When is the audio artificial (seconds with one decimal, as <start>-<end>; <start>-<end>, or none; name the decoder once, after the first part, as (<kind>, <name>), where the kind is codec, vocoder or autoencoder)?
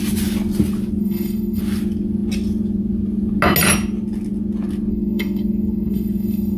1.0-1.6 (codec, SNAC); 4.9-6.6